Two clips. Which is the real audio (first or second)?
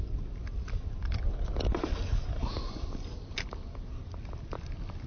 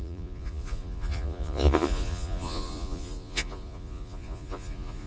first